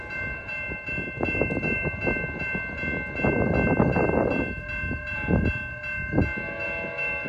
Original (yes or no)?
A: yes